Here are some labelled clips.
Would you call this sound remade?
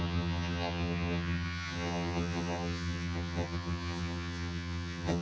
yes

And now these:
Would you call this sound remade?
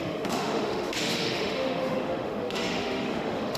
yes